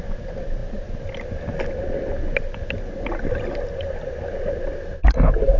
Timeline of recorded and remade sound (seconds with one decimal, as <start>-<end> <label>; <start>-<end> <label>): 0.0-5.6 recorded